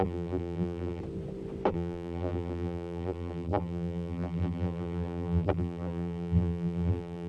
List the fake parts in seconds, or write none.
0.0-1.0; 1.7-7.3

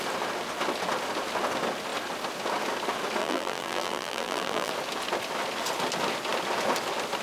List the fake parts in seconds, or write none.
3.2-4.7

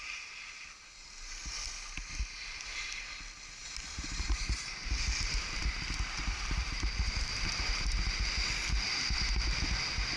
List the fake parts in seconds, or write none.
3.6-8.2

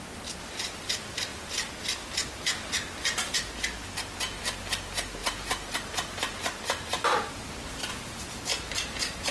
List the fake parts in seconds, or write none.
5.2-7.8; 8.5-9.3

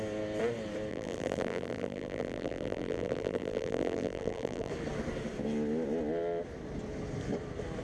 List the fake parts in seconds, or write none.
0.9-4.7

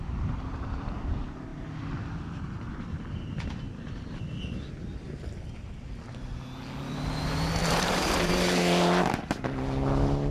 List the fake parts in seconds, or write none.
7.6-8.3

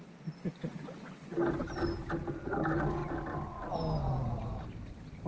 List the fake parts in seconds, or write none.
none